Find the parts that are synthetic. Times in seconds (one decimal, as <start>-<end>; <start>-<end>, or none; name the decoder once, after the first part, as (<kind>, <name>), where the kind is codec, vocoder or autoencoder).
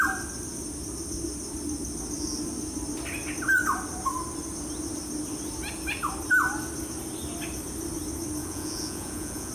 8.4-9.5 (vocoder, Vocos)